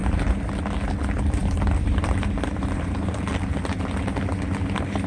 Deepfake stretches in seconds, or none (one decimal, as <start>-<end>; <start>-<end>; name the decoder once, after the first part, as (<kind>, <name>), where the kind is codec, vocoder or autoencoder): 0.0-0.5 (vocoder, BigVGAN v2); 1.4-3.3